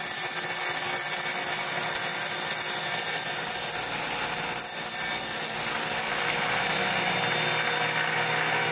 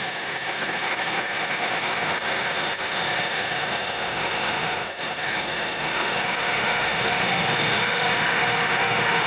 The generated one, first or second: second